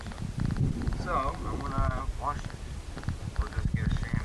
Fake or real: real